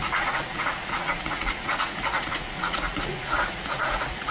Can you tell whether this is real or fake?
fake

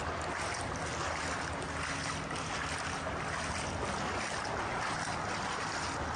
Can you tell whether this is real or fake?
real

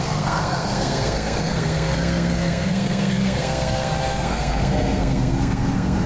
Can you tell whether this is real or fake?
fake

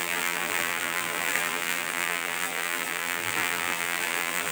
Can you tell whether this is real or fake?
fake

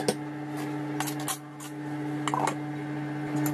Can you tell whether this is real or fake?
real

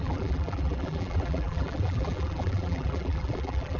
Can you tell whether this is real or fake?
fake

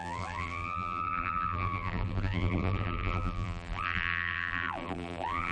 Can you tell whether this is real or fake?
fake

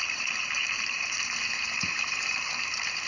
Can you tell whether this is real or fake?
fake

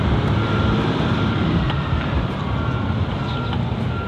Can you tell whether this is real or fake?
real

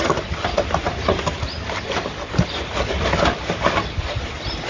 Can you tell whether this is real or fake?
real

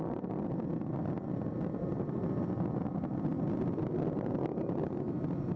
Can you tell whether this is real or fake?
real